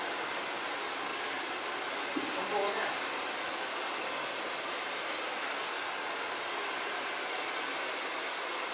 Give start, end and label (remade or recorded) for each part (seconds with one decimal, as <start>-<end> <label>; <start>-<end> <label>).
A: 0.0-8.7 recorded